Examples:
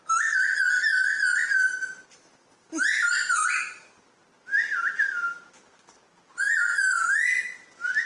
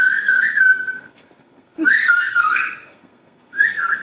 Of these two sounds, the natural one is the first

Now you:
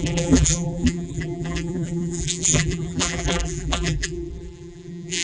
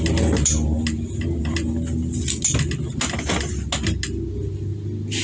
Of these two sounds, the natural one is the second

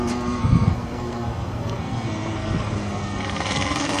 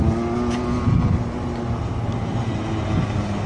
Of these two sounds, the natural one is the second